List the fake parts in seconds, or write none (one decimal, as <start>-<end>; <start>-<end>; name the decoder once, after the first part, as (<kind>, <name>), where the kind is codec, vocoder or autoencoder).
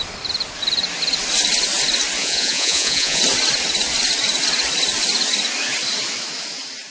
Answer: 2.2-3.2 (vocoder, Vocos)